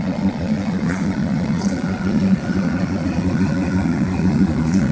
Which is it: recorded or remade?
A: remade